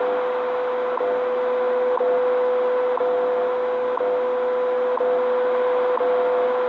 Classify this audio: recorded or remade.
recorded